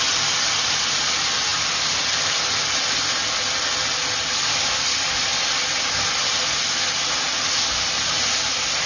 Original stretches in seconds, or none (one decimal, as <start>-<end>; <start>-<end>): 0.0-8.9